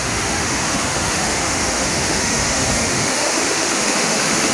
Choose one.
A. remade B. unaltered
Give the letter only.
A